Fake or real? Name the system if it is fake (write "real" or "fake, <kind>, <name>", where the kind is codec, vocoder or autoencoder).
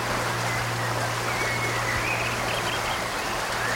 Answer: real